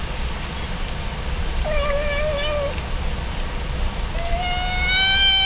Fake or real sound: real